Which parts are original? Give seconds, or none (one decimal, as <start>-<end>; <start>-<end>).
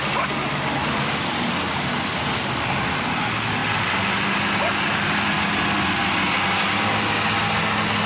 0.0-8.1